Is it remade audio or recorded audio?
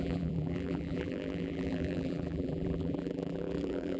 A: remade